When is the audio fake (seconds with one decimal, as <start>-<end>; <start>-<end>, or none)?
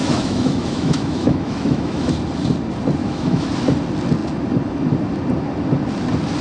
0.0-2.1; 3.0-3.5